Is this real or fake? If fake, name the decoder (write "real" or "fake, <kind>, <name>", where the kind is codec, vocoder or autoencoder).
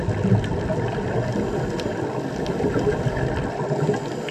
real